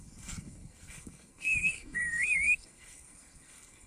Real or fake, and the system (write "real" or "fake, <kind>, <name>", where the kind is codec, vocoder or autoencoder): fake, codec, SNAC